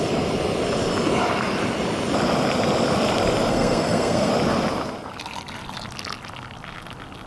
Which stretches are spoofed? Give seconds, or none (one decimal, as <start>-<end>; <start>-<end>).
3.5-4.3